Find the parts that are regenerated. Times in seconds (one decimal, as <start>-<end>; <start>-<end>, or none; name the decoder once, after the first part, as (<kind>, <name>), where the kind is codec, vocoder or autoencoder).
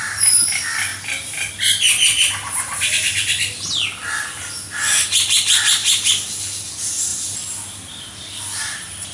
0.0-0.9 (vocoder, BigVGAN v2); 2.2-5.8; 6.4-9.1